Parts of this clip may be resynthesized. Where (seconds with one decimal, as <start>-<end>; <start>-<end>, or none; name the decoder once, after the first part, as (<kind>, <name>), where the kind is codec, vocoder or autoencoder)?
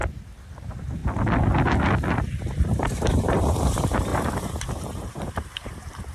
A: 0.0-1.0 (vocoder, BigVGAN v2); 2.1-6.1